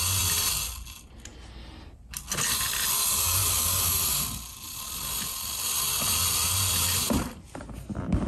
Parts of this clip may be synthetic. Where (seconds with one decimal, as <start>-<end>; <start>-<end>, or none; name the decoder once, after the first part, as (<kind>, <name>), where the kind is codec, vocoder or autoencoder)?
none